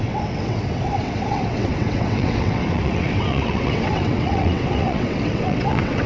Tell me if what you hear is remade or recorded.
remade